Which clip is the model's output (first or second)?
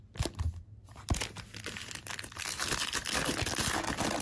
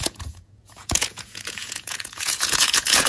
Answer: second